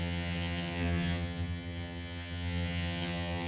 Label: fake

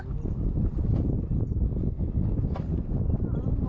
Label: real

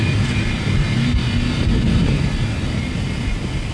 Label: real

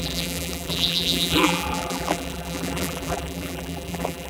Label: fake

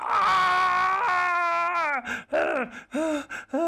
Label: real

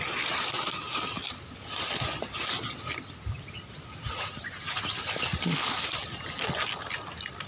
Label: real